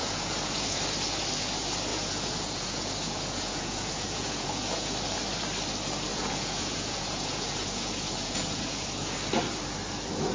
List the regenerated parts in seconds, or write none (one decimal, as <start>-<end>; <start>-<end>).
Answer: 0.0-0.8; 1.9-4.9; 6.1-9.1